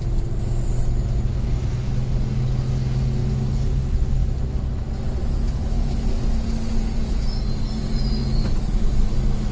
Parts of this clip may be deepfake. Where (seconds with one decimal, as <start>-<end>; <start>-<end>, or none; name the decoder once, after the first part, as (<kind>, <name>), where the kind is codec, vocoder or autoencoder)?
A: 5.2-6.2 (autoencoder, DAC-VAE); 8.2-8.8